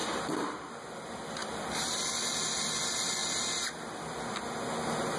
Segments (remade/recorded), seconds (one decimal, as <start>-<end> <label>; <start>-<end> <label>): 0.0-5.2 recorded